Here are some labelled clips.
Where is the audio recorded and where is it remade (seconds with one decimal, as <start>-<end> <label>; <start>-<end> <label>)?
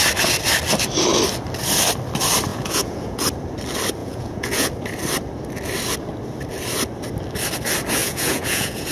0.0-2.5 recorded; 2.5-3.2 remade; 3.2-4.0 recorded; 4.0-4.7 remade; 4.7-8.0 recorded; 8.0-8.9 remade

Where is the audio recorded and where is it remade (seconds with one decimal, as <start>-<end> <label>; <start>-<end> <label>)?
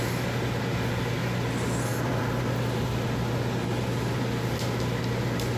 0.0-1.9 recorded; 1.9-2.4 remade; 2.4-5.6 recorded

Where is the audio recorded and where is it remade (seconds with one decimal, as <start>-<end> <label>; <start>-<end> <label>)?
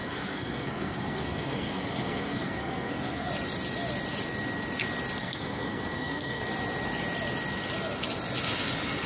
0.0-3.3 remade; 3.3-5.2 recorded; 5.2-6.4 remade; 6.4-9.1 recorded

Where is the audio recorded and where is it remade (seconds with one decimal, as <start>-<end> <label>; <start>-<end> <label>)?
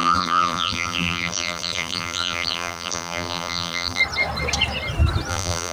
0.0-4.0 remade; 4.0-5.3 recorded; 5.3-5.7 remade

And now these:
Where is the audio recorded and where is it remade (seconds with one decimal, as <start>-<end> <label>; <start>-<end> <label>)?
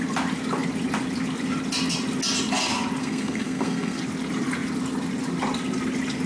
0.0-3.0 recorded; 3.0-4.0 remade; 4.0-6.3 recorded